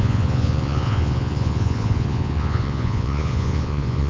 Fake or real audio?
fake